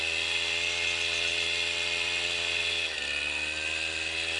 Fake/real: real